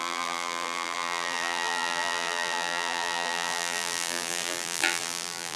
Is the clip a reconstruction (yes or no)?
yes